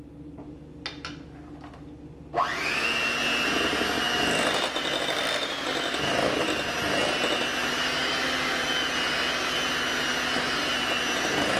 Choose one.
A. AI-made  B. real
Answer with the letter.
B